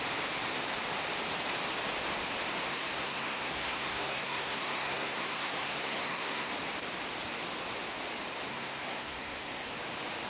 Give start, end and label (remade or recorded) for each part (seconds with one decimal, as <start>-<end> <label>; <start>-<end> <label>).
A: 0.0-2.7 recorded; 2.7-6.5 remade; 6.5-8.5 recorded; 8.5-9.7 remade; 9.7-10.3 recorded